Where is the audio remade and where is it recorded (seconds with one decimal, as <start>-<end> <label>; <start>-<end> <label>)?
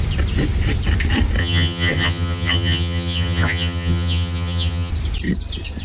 0.0-1.4 recorded; 1.4-4.9 remade; 4.9-5.8 recorded